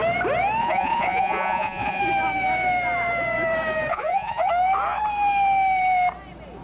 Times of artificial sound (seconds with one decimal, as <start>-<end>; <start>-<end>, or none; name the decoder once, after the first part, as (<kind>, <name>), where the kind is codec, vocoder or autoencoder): 0.6-2.0 (vocoder, Vocos); 3.9-4.5